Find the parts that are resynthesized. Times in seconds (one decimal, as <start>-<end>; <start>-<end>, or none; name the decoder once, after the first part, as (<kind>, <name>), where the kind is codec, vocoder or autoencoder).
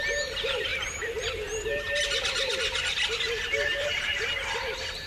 0.7-1.7 (vocoder, BigVGAN v2); 3.8-4.3